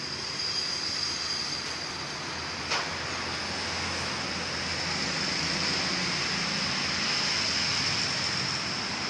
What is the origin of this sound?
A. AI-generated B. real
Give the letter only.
B